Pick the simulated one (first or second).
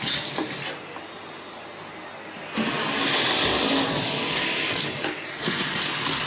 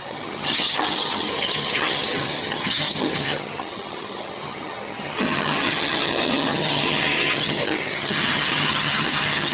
second